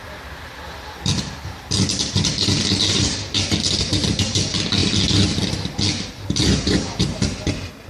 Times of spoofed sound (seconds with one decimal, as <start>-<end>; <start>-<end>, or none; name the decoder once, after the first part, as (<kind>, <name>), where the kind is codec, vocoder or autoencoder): 0.0-3.7 (vocoder, BigVGAN v2)